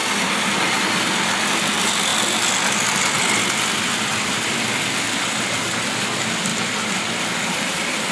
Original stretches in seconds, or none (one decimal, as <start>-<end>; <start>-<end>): 0.0-8.1